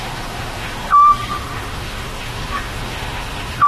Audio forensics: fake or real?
fake